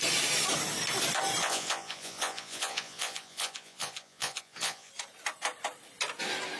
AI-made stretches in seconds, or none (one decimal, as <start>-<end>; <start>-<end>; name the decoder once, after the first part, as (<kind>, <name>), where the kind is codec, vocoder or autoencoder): 1.4-4.9 (vocoder, Vocos)